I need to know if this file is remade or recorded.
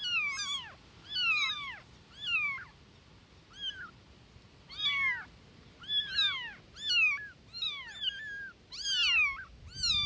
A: recorded